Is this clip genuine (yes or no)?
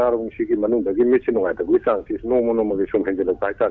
yes